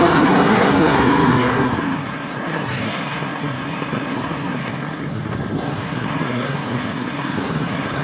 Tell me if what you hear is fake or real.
fake